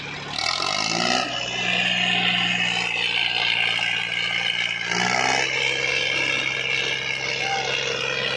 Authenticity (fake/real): real